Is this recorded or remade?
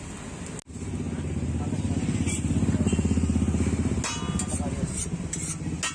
recorded